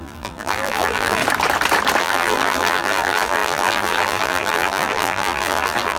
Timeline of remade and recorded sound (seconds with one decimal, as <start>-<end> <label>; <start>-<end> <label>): 0.0-1.2 remade; 1.2-2.0 recorded; 2.0-6.0 remade